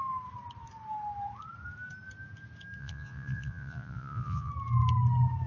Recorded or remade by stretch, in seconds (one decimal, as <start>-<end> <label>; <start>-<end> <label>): 0.0-2.8 recorded; 2.8-4.5 remade; 4.5-5.5 recorded